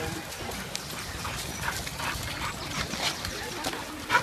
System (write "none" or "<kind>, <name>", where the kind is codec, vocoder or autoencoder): none